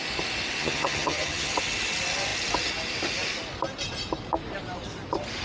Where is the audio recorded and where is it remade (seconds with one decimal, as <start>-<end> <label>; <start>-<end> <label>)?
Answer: 0.0-0.6 recorded; 0.6-1.5 remade; 1.5-5.4 recorded